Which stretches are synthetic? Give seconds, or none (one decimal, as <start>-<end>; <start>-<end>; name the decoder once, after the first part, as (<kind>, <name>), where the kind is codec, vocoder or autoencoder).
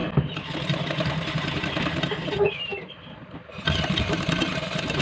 none